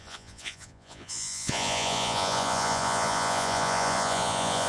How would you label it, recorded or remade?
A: remade